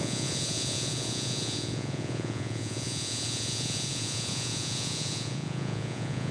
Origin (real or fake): fake